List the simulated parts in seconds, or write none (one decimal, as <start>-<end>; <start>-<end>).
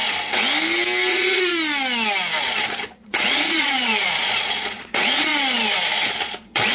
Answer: 1.1-1.5; 2.4-5.3; 6.0-6.7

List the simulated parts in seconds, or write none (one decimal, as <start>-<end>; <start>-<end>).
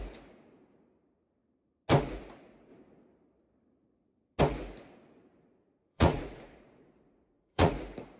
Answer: 5.3-7.7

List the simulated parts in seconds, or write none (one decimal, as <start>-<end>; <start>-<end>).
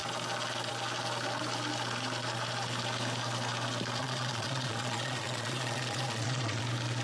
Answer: 4.0-6.6